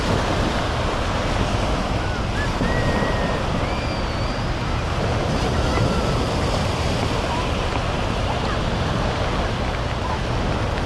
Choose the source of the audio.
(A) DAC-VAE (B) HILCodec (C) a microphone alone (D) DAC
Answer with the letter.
C